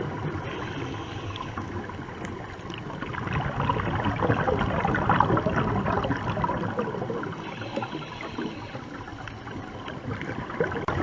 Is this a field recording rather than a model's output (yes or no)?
yes